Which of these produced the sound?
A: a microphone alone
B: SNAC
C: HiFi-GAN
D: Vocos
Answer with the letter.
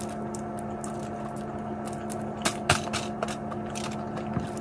A